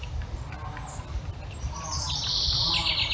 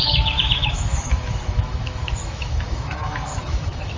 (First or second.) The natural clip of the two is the first